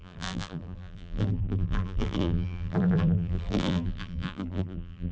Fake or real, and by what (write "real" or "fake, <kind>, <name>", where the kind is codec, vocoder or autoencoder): fake, vocoder, BigVGAN v2